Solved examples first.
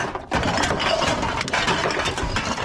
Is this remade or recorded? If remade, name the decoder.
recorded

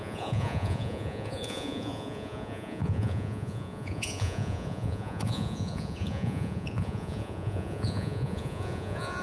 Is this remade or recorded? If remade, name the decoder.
remade, vocoder, Vocos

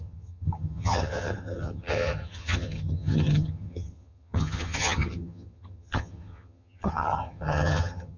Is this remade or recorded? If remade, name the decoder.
remade, vocoder, HiFi-GAN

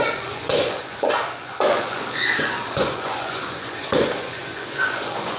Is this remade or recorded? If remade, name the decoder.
remade, vocoder, Vocos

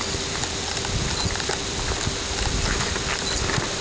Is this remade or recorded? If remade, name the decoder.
recorded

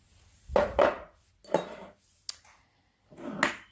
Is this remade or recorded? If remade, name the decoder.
recorded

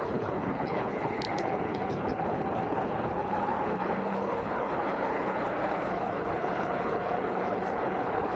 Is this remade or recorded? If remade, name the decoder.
remade, codec, HILCodec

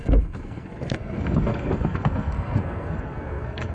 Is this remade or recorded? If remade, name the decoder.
remade, codec, SNAC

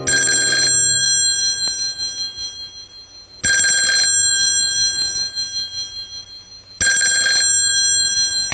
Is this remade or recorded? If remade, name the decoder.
recorded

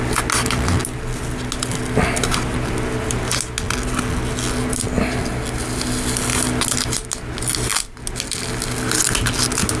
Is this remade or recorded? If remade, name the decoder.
recorded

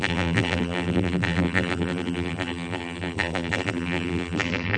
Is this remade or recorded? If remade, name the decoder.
remade, vocoder, BigVGAN v2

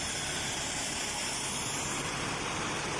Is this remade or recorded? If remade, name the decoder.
recorded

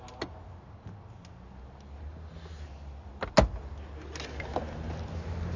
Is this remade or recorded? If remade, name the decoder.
recorded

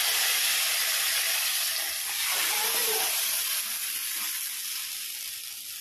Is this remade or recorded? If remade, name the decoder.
recorded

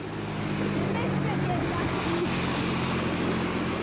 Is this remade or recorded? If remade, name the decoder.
recorded